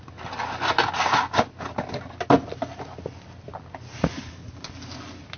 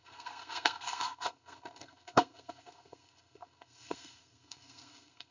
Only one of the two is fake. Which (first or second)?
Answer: second